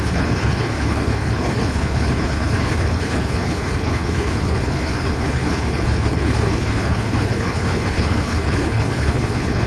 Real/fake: fake